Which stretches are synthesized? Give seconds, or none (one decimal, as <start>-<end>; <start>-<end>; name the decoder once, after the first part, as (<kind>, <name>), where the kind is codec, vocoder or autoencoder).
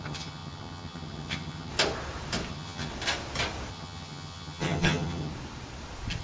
0.0-1.7 (vocoder, HiFi-GAN); 2.5-2.9; 3.7-5.3